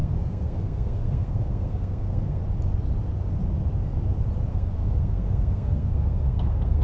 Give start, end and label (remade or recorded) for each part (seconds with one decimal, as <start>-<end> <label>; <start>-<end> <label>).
0.0-2.4 remade; 2.4-4.5 recorded; 4.5-6.8 remade